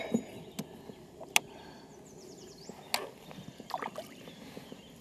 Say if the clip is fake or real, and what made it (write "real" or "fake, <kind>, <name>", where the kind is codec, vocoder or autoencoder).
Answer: real